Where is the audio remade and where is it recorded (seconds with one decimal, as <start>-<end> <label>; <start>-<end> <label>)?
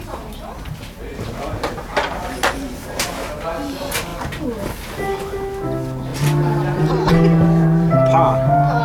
0.0-1.9 recorded; 1.9-3.1 remade; 3.1-6.1 recorded; 6.1-8.8 remade